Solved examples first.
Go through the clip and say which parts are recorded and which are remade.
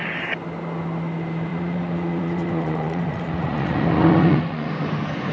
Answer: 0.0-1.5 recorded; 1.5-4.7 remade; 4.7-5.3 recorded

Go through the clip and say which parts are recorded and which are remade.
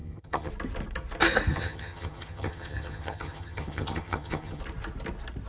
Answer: 0.0-0.5 remade; 0.5-1.5 recorded; 1.5-4.6 remade; 4.6-5.5 recorded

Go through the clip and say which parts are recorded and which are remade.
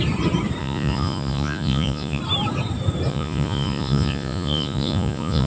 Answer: 0.0-0.6 recorded; 0.6-2.2 remade; 2.2-3.1 recorded; 3.1-5.5 remade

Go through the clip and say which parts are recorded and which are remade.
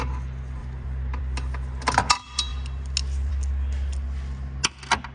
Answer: 0.0-0.6 recorded; 0.6-1.2 remade; 1.2-5.1 recorded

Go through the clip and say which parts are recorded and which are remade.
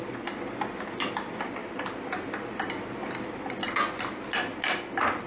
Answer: 0.0-5.3 recorded